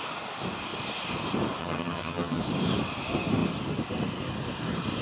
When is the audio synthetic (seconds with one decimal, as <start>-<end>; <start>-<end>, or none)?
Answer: 1.6-2.4